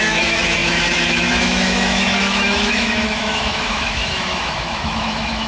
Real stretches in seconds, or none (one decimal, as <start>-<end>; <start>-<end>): none